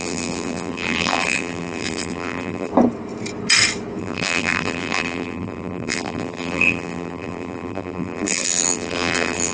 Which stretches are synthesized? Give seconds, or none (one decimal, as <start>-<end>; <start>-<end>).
0.0-2.7; 4.0-9.5